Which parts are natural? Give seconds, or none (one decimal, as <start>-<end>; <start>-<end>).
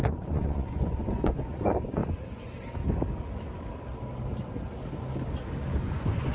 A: 2.0-5.8